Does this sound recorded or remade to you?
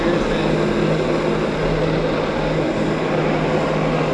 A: recorded